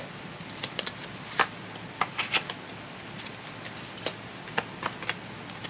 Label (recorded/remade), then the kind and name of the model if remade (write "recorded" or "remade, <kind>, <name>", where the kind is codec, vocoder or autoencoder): recorded